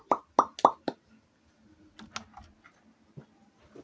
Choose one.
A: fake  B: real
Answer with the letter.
B